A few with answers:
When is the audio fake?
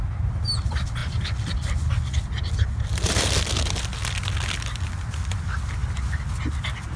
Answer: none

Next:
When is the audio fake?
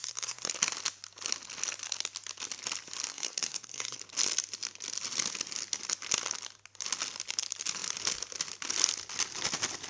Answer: 0.0-0.5 (codec, SNAC); 3.1-4.0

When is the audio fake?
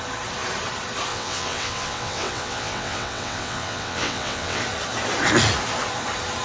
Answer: 1.1-4.6 (vocoder, WaveNeXt)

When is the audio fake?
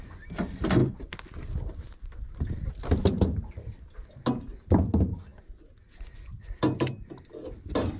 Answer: none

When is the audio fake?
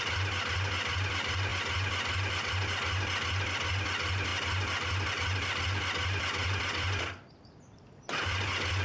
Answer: none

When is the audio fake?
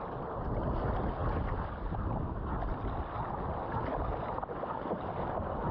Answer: none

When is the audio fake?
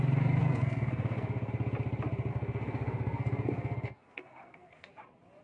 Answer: 0.4-1.5 (codec, SNAC); 2.3-4.9